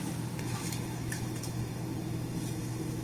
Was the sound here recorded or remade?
remade